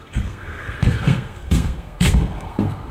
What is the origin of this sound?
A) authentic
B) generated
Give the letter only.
B